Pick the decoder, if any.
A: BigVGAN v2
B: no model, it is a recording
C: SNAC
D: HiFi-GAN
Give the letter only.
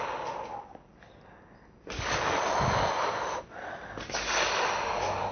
B